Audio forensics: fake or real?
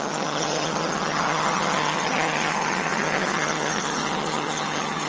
fake